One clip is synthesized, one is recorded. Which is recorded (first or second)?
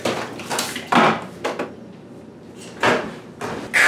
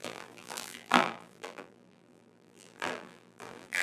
first